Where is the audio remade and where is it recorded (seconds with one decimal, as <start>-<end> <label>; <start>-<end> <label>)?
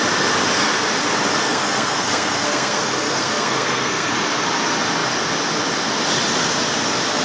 0.0-1.4 recorded; 1.4-4.1 remade; 4.1-7.2 recorded